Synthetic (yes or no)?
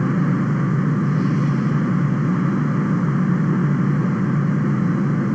no